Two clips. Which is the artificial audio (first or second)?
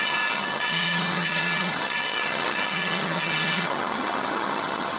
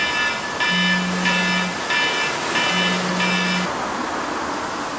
first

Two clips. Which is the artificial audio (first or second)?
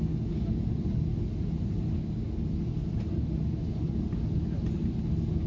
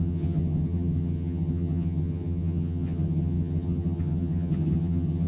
second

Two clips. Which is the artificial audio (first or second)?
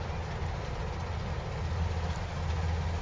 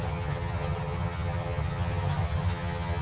second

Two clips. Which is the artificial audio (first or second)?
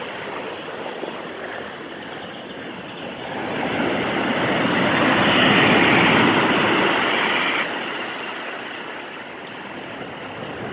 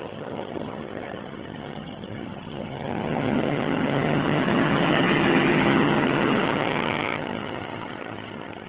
second